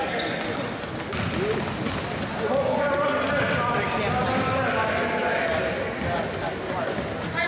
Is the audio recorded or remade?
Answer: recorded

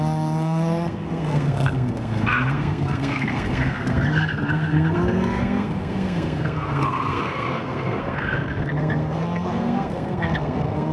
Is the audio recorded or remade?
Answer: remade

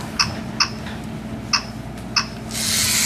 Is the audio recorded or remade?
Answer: recorded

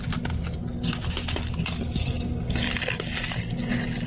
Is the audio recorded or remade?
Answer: recorded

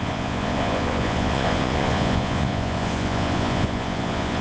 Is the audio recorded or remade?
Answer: remade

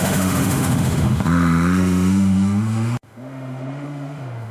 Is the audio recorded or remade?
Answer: remade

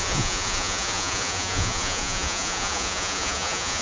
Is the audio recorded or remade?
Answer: remade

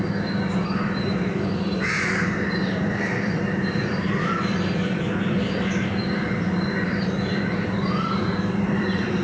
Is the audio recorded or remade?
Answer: remade